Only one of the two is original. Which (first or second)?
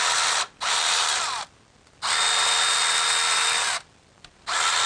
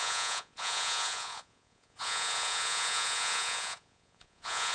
first